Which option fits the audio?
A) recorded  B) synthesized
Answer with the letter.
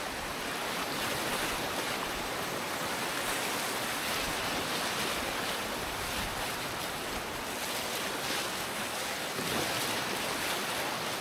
A